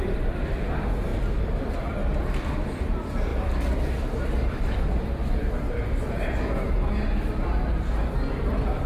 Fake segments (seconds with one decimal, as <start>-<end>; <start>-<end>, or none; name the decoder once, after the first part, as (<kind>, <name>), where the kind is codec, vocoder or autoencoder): none